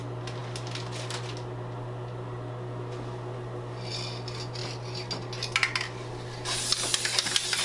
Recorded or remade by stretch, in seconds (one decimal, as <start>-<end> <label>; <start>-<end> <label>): 0.0-7.6 recorded